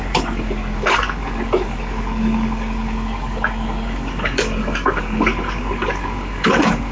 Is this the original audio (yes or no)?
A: no